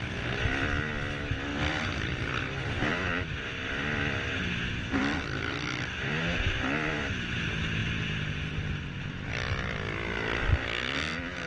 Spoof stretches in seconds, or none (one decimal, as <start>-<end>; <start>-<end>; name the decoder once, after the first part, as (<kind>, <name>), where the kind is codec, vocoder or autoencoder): 1.5-4.3 (vocoder, BigVGAN v2)